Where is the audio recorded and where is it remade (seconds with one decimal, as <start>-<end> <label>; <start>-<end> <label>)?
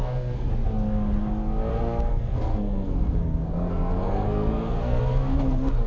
0.0-0.5 remade; 0.5-1.7 recorded; 1.7-5.0 remade; 5.0-5.9 recorded